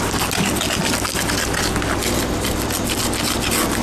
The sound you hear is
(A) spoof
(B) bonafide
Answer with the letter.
B